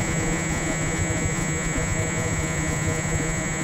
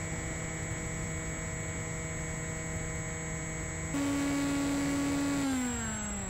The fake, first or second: first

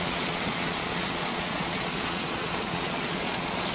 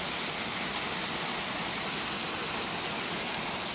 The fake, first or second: first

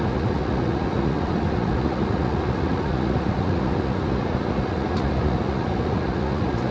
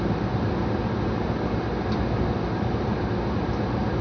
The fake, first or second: first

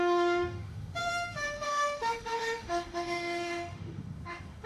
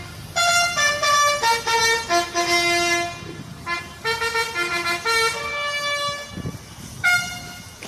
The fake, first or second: first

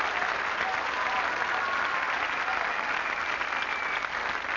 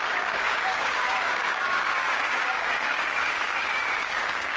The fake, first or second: second